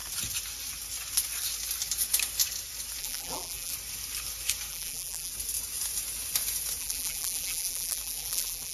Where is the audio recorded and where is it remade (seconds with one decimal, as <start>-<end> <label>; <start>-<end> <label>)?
0.0-3.0 recorded; 3.0-3.7 remade; 3.7-4.7 recorded; 4.7-5.3 remade; 5.3-6.8 recorded; 6.8-8.7 remade